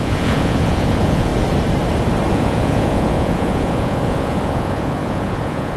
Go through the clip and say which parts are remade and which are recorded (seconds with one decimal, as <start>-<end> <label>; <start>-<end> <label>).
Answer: 0.0-1.3 remade; 1.3-2.3 recorded; 2.3-5.8 remade